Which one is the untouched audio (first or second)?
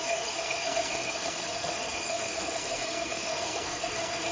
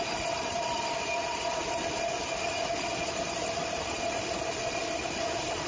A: second